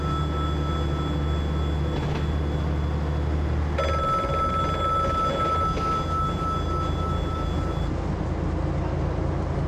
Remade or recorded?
recorded